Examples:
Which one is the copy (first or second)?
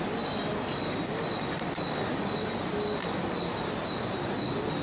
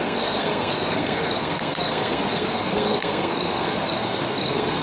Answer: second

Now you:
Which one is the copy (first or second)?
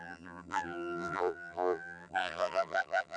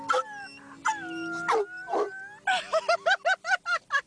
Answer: first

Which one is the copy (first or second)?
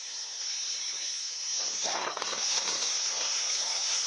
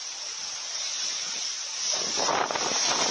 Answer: first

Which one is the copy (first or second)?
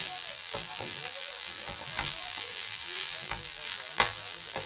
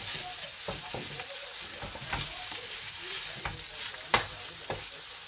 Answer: first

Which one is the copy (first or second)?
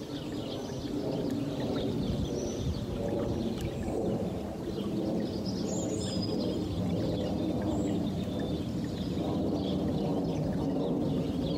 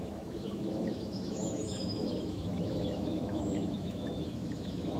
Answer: second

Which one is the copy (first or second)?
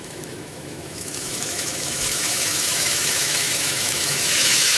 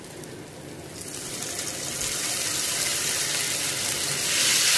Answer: first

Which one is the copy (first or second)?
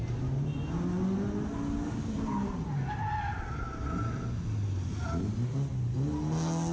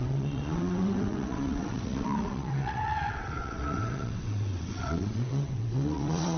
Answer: second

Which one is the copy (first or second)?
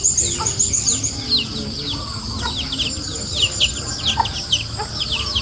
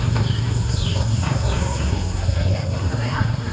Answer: second